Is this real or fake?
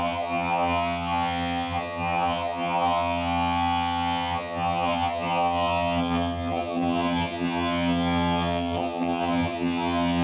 fake